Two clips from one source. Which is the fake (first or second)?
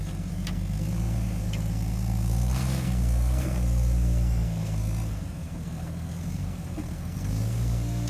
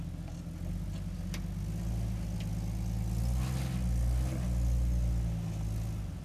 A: first